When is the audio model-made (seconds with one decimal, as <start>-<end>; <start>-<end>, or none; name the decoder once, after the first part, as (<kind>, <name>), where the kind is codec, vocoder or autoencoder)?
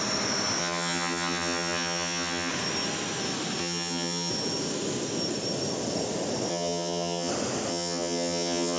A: 0.6-2.5 (vocoder, HiFi-GAN); 3.6-4.3; 6.5-7.3; 7.7-8.8